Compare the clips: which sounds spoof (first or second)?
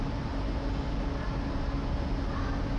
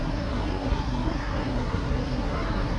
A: second